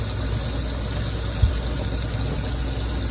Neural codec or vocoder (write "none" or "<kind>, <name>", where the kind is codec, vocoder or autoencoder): none